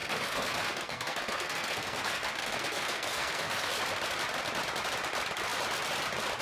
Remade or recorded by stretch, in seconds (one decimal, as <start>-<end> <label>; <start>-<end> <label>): 0.0-3.7 remade; 3.7-6.4 recorded